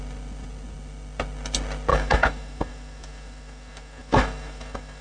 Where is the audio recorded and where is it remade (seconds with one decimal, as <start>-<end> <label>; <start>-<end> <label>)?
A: 0.0-1.9 recorded; 1.9-5.0 remade